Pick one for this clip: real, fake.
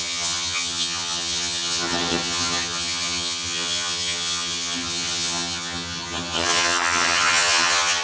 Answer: fake